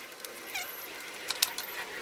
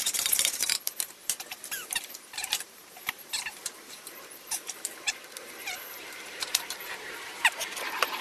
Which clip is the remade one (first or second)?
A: second